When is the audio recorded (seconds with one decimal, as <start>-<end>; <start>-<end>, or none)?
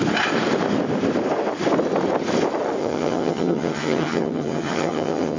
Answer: 0.0-2.8